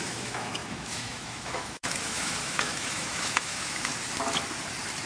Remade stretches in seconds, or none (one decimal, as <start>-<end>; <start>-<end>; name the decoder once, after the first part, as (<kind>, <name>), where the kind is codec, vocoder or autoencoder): 0.0-3.9 (autoencoder, DAC-VAE)